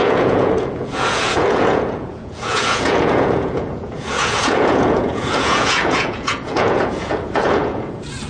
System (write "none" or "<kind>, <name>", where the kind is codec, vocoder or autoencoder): vocoder, Vocos